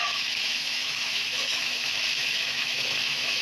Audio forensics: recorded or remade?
remade